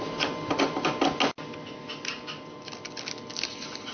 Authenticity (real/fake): real